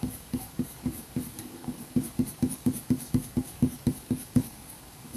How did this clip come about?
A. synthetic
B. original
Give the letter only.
A